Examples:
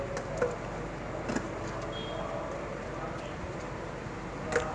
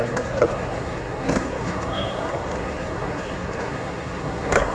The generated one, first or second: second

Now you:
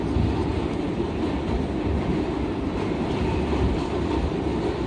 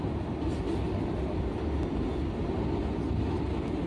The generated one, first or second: first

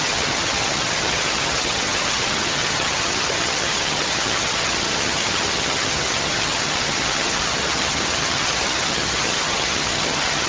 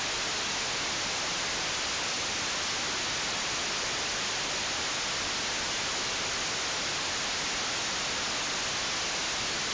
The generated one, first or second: first